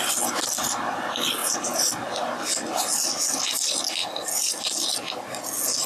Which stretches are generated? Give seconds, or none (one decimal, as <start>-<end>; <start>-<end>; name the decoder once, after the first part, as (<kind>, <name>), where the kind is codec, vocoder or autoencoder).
1.4-2.8 (vocoder, BigVGAN v2)